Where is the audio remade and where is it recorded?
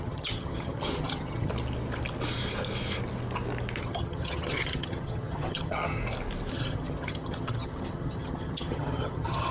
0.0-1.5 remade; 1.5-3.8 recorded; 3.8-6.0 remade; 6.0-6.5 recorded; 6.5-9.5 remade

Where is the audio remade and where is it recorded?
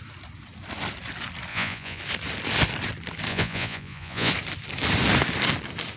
0.0-1.5 recorded; 1.5-2.0 remade; 2.0-3.3 recorded; 3.3-4.3 remade; 4.3-6.0 recorded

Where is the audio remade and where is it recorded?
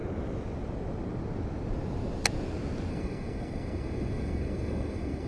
0.0-2.9 recorded; 2.9-5.3 remade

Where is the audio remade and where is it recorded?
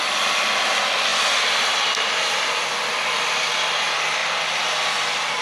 0.0-1.1 recorded; 1.1-3.5 remade; 3.5-4.2 recorded; 4.2-5.4 remade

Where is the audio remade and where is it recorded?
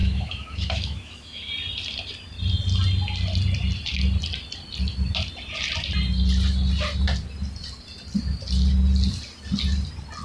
0.0-1.5 remade; 1.5-10.2 recorded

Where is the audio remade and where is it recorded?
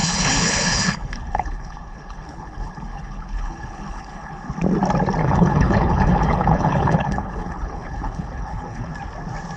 0.0-4.5 remade; 4.5-5.2 recorded; 5.2-8.9 remade; 8.9-9.6 recorded